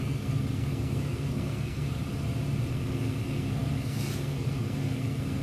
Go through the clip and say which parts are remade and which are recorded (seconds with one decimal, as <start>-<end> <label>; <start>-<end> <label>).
0.0-2.0 remade; 2.0-2.7 recorded; 2.7-5.4 remade